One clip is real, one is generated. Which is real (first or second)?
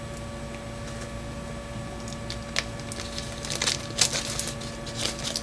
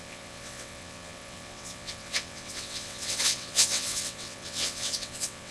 first